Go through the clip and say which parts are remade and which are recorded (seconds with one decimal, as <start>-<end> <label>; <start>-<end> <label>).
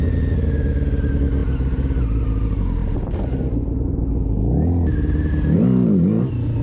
0.0-1.4 recorded; 1.4-2.2 remade; 2.2-2.8 recorded; 2.8-5.3 remade; 5.3-6.6 recorded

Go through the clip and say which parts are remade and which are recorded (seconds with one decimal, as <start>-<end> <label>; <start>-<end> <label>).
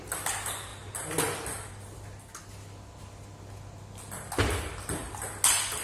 0.0-5.8 recorded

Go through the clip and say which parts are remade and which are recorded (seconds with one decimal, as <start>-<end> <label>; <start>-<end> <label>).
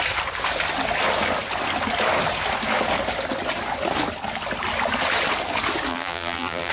0.0-5.9 recorded; 5.9-6.7 remade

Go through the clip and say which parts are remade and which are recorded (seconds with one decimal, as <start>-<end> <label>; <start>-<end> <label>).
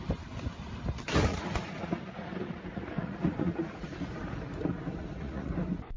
0.0-1.3 recorded; 1.3-2.0 remade; 2.0-2.4 recorded; 2.4-3.9 remade; 3.9-5.0 recorded; 5.0-5.5 remade; 5.5-6.0 recorded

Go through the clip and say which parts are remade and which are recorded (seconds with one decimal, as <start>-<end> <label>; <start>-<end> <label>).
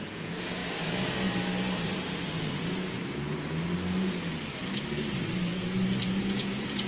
0.0-0.6 remade; 0.6-2.5 recorded; 2.5-3.0 remade; 3.0-6.0 recorded; 6.0-6.9 remade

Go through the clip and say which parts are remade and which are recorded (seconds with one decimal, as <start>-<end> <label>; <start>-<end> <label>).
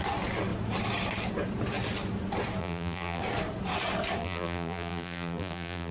0.0-2.6 recorded; 2.6-3.2 remade; 3.2-4.2 recorded; 4.2-5.9 remade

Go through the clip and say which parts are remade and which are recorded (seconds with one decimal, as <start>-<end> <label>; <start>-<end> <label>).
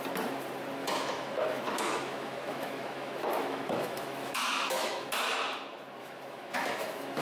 0.0-0.8 recorded; 0.8-5.1 remade; 5.1-6.0 recorded; 6.0-7.2 remade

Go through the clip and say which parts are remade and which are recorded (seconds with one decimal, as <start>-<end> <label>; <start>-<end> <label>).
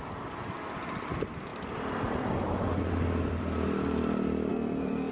0.0-4.5 recorded; 4.5-5.1 remade